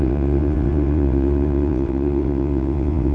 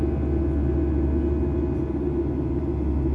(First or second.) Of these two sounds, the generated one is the first